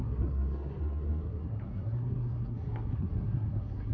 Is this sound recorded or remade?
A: remade